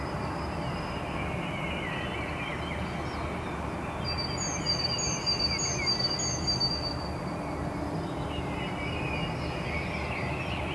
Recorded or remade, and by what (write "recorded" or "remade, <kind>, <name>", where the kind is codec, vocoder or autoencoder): recorded